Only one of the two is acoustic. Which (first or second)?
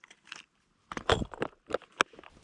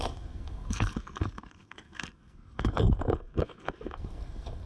first